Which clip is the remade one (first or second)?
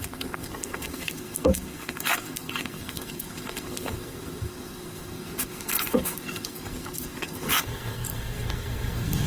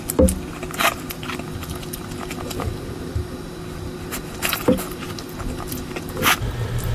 first